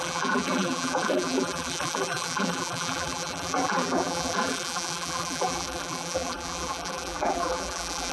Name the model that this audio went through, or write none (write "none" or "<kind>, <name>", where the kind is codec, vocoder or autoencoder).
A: vocoder, BigVGAN v2